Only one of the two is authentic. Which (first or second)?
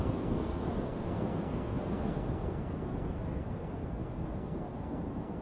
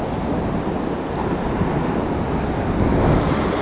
second